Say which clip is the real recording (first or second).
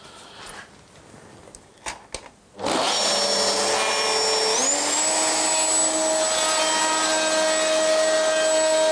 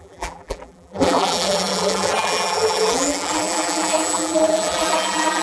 first